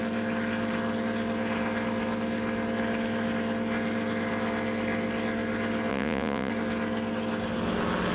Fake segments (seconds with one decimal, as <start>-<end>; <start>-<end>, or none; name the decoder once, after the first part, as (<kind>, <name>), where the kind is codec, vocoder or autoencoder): 5.9-6.5 (vocoder, Vocos)